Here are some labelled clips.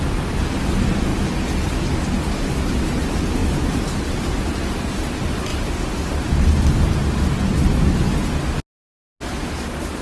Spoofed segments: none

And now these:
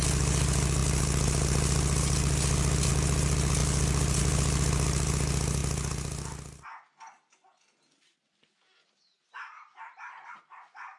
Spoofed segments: none

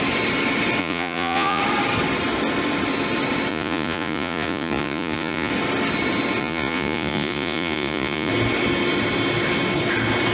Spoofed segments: 0.8-1.6 (vocoder, Vocos); 3.5-5.5; 6.4-8.3

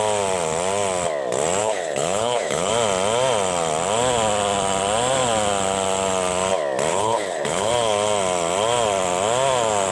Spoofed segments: 1.6-2.7 (codec, HILCodec); 6.9-7.7

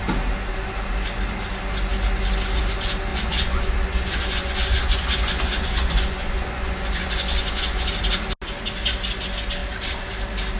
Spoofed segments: 3.1-7.9 (vocoder, Vocos)

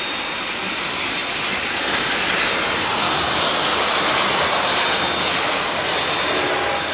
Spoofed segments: none

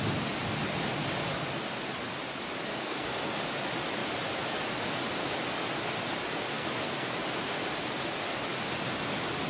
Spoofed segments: 2.8-3.4 (codec, SNAC); 6.5-7.1

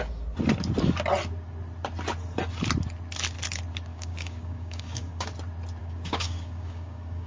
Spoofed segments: 3.9-5.3 (codec, DAC); 5.8-7.3